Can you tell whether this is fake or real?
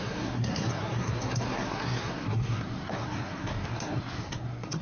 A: fake